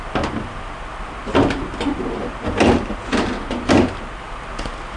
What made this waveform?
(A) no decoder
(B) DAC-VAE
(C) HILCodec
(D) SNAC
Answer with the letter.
A